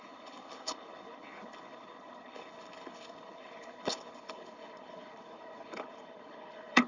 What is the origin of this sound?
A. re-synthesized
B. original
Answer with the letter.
A